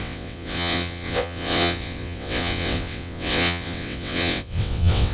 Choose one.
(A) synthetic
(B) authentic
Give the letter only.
A